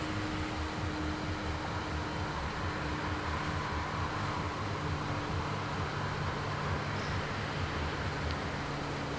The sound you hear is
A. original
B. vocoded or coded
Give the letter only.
A